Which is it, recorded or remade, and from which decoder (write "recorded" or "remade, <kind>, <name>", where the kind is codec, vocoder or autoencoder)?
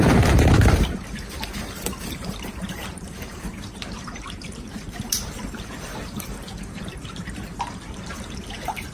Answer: remade, vocoder, BigVGAN v2